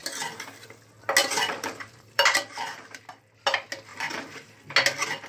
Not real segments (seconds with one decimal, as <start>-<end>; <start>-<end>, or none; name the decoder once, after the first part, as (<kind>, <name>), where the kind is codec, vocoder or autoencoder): 1.2-3.0 (vocoder, BigVGAN v2); 3.9-4.5